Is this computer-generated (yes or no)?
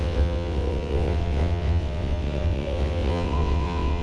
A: yes